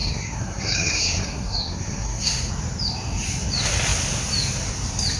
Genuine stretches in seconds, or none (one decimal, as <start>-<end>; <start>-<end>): 2.5-5.2